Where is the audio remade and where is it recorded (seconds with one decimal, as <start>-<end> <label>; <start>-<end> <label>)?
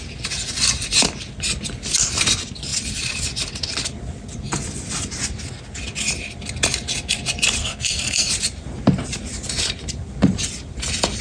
0.0-7.6 recorded; 7.6-8.3 remade; 8.3-11.2 recorded